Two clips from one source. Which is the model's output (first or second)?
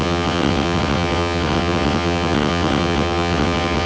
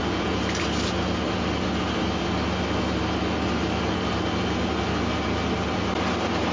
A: first